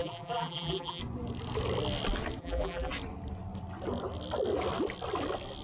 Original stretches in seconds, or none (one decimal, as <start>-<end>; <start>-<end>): 1.0-2.4; 2.9-5.6